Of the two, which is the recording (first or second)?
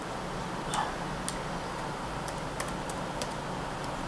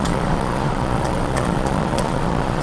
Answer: first